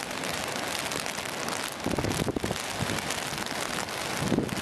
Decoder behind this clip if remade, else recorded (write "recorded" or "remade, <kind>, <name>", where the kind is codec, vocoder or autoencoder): recorded